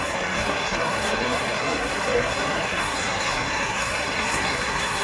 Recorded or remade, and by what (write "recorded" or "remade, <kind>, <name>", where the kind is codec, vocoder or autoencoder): remade, codec, SNAC